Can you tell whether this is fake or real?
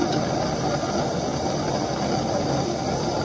real